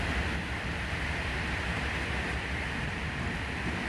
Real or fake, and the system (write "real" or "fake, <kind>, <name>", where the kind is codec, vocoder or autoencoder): fake, vocoder, BigVGAN v2